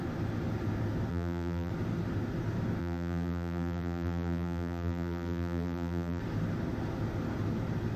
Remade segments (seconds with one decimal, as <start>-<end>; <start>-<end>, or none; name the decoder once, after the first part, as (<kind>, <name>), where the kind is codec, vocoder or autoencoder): 1.1-1.7 (vocoder, BigVGAN v2); 2.8-6.2